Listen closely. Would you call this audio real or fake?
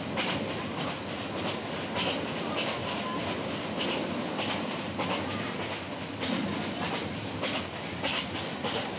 real